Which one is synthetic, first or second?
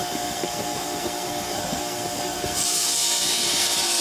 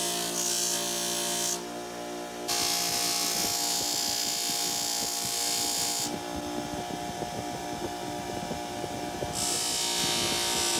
first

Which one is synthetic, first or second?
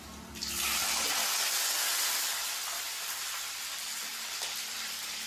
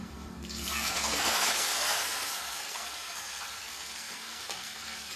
second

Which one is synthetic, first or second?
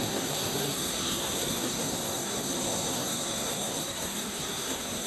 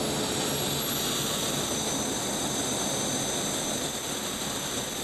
first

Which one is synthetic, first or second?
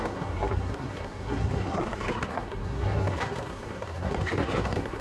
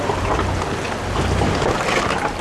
first